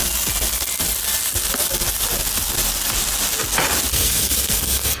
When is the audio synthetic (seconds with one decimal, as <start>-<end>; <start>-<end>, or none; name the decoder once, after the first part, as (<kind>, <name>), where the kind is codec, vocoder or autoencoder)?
3.9-5.0 (codec, SNAC)